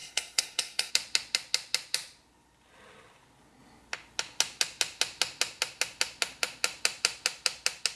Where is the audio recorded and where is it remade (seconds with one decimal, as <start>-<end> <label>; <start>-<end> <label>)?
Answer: 0.0-0.9 remade; 0.9-8.0 recorded